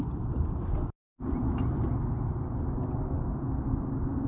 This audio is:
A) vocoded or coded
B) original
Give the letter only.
B